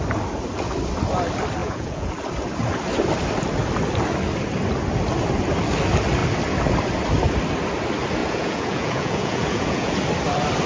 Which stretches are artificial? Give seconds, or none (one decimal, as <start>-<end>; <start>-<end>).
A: 1.6-2.1; 8.2-9.9